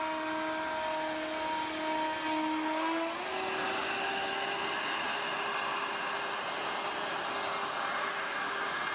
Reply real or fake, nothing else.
real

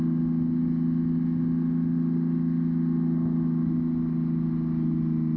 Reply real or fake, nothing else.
real